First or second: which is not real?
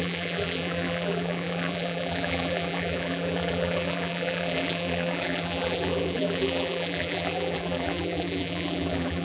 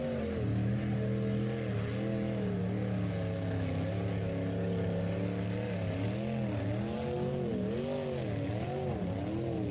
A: first